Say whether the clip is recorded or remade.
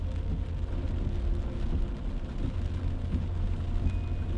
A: recorded